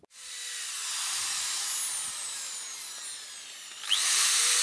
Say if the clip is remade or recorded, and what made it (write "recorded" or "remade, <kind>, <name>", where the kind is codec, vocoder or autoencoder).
recorded